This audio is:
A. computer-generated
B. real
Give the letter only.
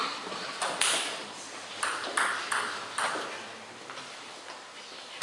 A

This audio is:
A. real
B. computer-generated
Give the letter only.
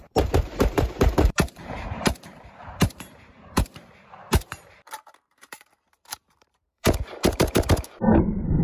B